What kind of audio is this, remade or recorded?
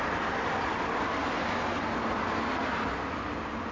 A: recorded